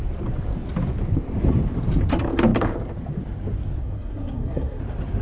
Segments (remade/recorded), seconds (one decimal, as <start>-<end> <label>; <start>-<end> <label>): 0.0-3.8 recorded; 3.8-4.8 remade; 4.8-5.2 recorded